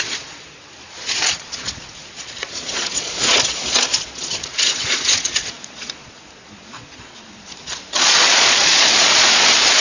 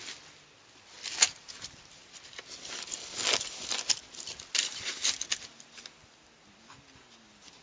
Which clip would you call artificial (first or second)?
first